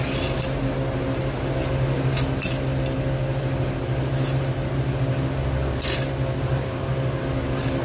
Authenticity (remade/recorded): recorded